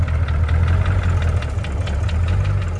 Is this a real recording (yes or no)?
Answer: yes